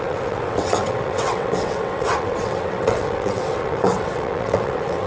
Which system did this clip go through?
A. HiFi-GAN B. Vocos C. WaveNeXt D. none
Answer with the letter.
C